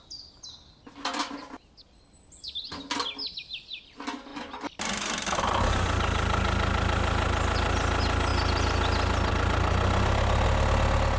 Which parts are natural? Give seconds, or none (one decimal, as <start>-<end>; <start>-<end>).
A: 0.0-11.2